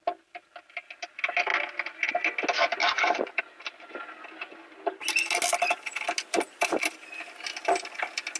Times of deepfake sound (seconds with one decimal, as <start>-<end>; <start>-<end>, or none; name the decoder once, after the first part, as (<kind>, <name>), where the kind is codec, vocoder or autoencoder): 2.8-3.4 (vocoder, BigVGAN v2)